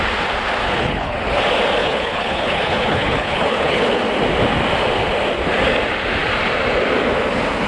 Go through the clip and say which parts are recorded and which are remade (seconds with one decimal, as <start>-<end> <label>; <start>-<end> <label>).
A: 0.0-0.6 recorded; 0.6-1.4 remade; 1.4-1.8 recorded; 1.8-4.0 remade; 4.0-7.7 recorded